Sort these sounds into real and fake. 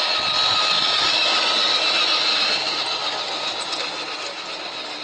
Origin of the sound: real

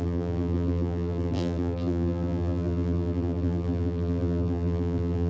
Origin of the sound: fake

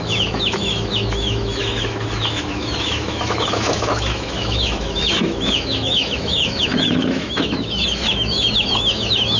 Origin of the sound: fake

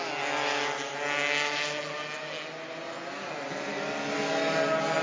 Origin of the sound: real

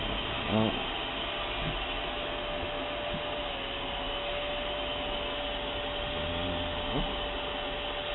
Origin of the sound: real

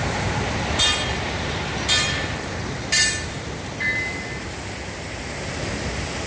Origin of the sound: real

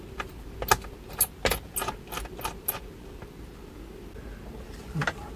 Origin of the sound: real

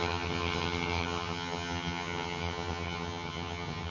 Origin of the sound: fake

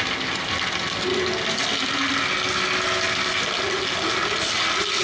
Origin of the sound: real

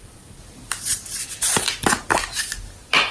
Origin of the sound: real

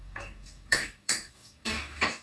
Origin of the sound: fake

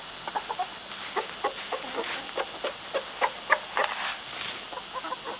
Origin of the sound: real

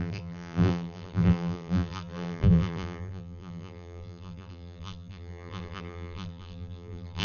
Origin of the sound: fake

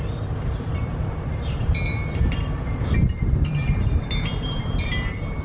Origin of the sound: fake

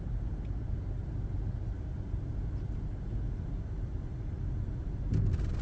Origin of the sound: real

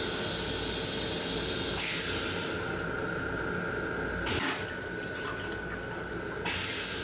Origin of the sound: real